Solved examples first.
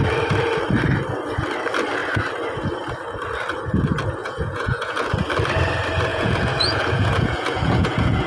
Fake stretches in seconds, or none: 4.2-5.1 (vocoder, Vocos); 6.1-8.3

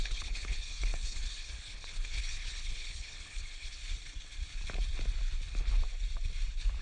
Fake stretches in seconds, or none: 0.0-3.8 (codec, HILCodec)

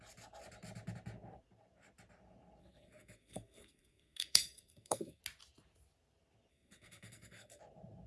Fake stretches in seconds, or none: 2.6-5.2 (codec, SNAC); 6.5-7.6

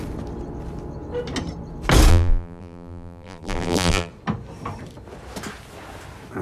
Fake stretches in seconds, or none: 2.1-4.1 (vocoder, BigVGAN v2)

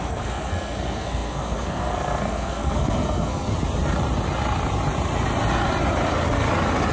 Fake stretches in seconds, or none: 0.0-3.5 (codec, SNAC)

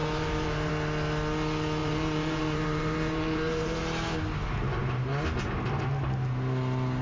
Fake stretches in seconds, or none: 0.0-0.7 (vocoder, BigVGAN v2); 1.8-3.8

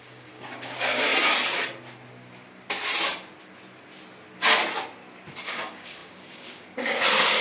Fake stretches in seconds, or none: 0.0-1.1 (codec, DAC); 5.5-7.4